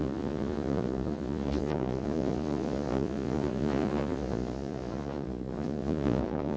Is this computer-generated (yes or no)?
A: yes